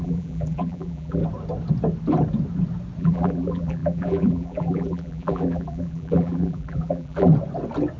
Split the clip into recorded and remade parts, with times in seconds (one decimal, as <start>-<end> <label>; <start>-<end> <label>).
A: 0.0-1.2 remade; 1.2-3.0 recorded; 3.0-7.3 remade; 7.3-8.0 recorded